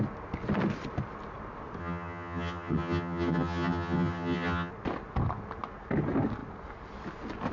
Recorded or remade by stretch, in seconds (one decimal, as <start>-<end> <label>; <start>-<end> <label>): 0.0-1.8 recorded; 1.8-4.7 remade; 4.7-7.5 recorded